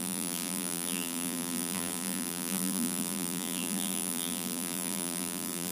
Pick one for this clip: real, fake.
fake